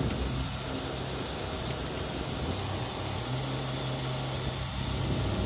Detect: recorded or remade recorded